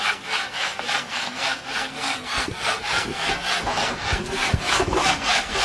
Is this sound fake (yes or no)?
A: yes